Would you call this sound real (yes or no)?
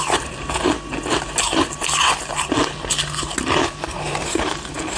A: yes